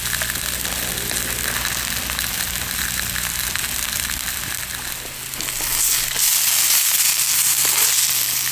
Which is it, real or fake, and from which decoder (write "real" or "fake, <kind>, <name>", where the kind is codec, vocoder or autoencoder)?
real